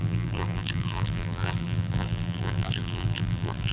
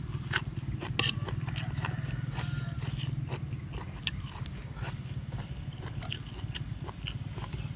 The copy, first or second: first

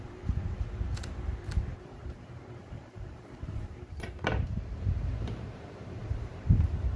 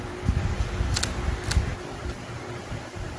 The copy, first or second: first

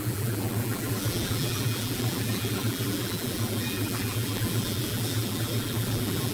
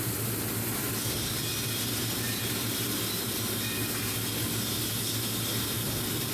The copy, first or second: first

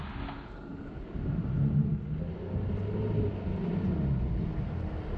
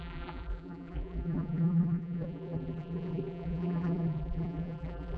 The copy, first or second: second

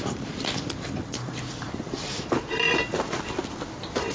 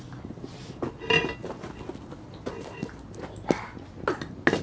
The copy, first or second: first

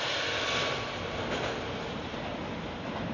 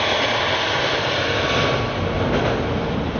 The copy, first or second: first